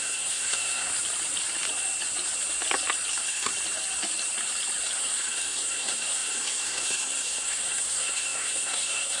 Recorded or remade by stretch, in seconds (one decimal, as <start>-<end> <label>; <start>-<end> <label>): 0.0-0.9 remade; 0.9-3.1 recorded; 3.1-3.5 remade; 3.5-5.0 recorded; 5.0-9.2 remade